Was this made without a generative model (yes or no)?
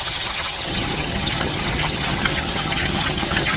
no